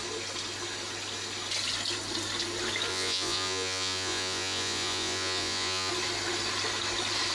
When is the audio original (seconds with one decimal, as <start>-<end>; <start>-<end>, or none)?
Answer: 0.0-2.9; 5.9-7.3